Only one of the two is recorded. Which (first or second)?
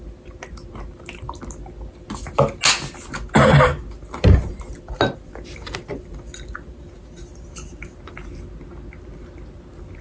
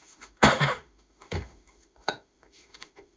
first